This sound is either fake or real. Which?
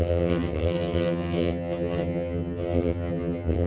fake